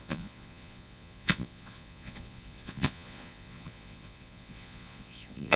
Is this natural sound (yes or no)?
no